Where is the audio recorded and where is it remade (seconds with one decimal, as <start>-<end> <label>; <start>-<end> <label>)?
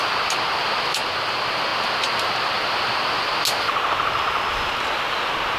0.0-5.6 recorded